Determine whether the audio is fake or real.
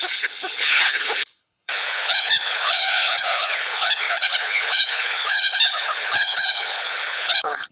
fake